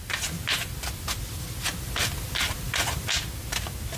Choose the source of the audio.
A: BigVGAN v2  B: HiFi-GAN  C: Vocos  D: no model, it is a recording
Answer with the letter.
D